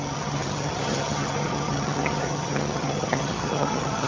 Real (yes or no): no